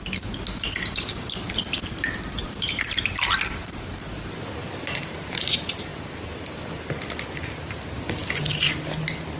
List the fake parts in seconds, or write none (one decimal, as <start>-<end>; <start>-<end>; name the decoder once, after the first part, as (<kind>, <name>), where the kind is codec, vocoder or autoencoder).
1.1-1.8 (vocoder, BigVGAN v2); 2.4-3.9; 5.9-6.8